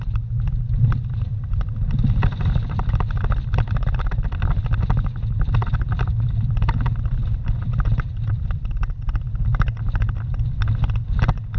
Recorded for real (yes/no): yes